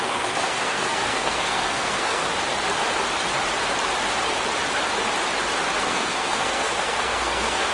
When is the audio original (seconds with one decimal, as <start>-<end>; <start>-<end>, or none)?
2.2-5.8